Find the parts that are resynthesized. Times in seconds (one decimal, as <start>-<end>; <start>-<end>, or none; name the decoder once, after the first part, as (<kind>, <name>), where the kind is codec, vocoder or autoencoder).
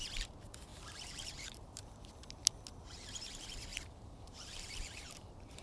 0.7-1.8 (vocoder, BigVGAN v2); 3.7-5.6